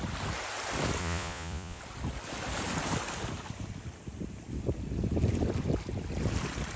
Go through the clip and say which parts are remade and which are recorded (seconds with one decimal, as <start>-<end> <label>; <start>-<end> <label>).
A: 0.0-1.0 recorded; 1.0-1.8 remade; 1.8-6.8 recorded